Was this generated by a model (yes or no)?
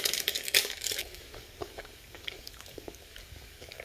yes